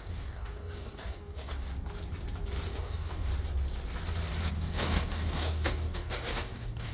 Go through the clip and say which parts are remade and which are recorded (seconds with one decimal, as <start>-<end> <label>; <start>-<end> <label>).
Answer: 0.0-1.7 remade; 1.7-2.7 recorded; 2.7-3.3 remade; 3.3-4.5 recorded; 4.5-6.9 remade